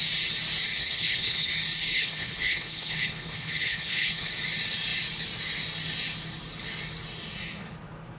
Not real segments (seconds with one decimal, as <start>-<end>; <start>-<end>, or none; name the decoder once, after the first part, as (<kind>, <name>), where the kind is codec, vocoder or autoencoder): 0.8-1.5 (codec, HILCodec); 1.9-4.3